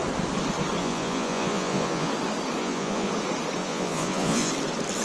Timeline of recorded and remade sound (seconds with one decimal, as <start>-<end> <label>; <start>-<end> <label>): 0.0-0.8 recorded; 0.8-2.1 remade; 2.1-2.6 recorded; 2.6-3.1 remade; 3.1-3.6 recorded; 3.6-4.5 remade; 4.5-5.0 recorded